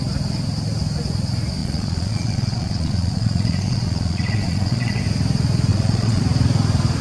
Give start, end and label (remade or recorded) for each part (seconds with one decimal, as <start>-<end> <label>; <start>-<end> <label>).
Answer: 0.0-1.6 recorded; 1.6-5.0 remade; 5.0-5.7 recorded; 5.7-6.2 remade; 6.2-7.0 recorded